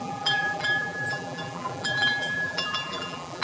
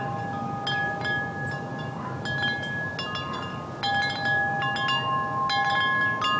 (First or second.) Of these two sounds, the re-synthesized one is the first